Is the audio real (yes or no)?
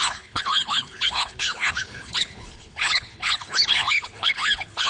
no